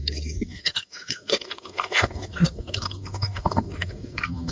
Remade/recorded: remade